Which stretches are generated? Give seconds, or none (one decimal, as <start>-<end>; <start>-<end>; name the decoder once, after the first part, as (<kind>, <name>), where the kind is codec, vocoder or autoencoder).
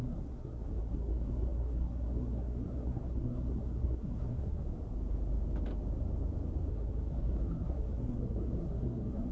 0.0-4.7 (codec, SNAC); 6.7-9.3